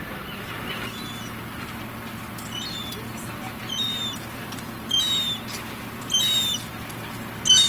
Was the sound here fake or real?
real